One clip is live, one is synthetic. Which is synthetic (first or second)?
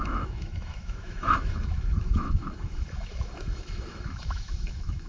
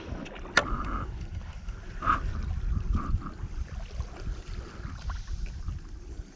first